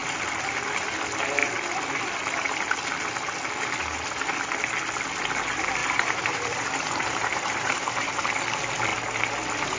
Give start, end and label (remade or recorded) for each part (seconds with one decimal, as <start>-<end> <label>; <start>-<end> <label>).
0.0-5.8 recorded; 5.8-8.2 remade; 8.2-9.8 recorded